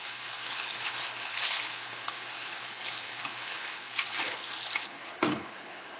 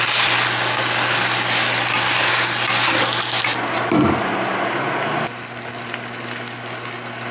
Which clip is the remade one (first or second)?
first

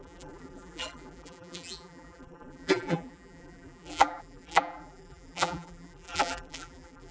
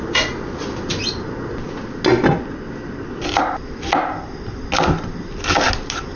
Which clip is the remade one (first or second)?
first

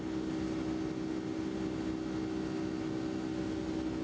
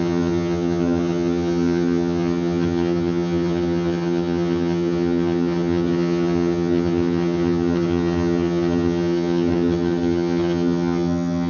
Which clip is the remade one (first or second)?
second